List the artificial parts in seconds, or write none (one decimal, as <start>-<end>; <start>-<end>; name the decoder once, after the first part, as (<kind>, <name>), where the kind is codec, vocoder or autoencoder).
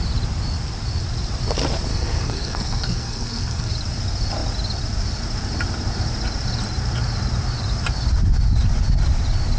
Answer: 1.9-3.7 (codec, SNAC)